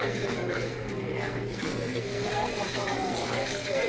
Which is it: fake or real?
fake